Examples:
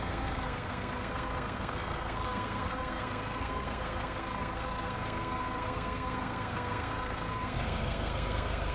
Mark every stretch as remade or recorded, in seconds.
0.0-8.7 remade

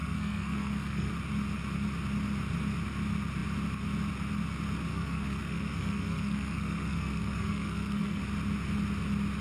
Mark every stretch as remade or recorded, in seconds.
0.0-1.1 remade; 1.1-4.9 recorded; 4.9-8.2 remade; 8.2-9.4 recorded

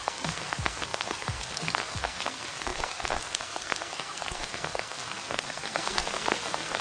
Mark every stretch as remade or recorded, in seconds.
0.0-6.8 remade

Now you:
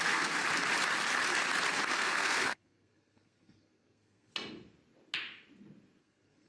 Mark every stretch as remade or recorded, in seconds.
0.0-0.4 remade; 0.4-1.9 recorded; 1.9-4.3 remade; 4.3-6.0 recorded; 6.0-6.5 remade

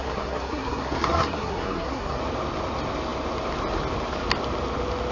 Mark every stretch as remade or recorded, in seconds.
0.0-2.2 remade; 2.2-5.1 recorded

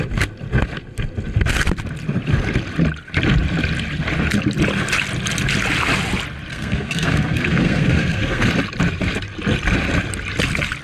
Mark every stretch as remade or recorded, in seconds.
0.0-6.5 recorded; 6.5-8.5 remade; 8.5-10.8 recorded